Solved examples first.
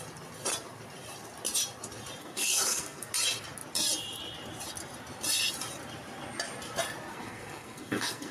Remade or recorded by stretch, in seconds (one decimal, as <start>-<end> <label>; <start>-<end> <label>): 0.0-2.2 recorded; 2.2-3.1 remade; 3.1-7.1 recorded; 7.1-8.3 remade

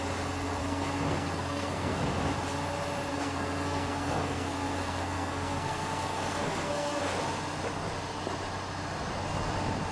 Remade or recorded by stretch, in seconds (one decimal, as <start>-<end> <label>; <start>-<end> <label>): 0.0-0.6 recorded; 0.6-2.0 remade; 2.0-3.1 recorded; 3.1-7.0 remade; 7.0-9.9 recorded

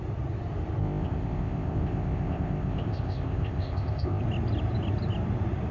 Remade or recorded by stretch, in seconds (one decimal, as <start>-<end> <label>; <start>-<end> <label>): 0.0-0.8 recorded; 0.8-4.2 remade; 4.2-5.7 recorded

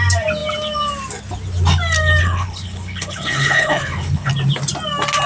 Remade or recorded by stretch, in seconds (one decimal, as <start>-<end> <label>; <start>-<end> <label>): 0.0-2.2 recorded; 2.2-4.3 remade; 4.3-5.3 recorded